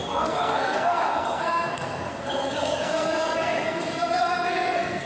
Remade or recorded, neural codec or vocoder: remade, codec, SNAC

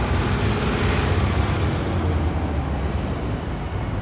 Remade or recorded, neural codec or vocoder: recorded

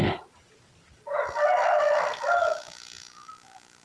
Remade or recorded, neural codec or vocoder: recorded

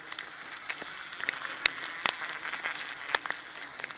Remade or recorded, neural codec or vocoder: recorded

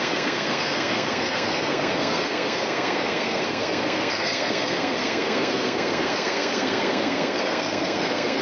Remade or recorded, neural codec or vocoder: remade, codec, SNAC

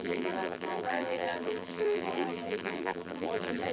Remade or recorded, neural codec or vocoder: remade, vocoder, BigVGAN v2